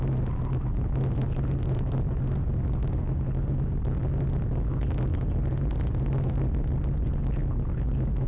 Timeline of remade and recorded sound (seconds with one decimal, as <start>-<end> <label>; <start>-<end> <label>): 0.0-8.3 recorded